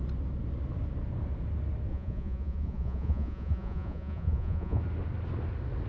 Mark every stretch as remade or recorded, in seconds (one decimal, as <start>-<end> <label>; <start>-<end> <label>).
0.0-1.9 recorded; 1.9-4.8 remade; 4.8-5.9 recorded